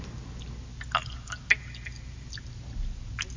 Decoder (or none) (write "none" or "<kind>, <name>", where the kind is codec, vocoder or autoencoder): none